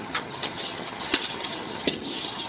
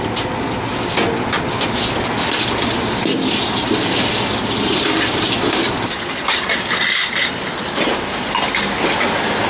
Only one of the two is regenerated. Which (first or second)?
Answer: first